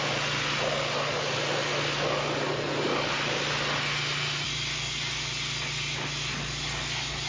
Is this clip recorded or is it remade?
recorded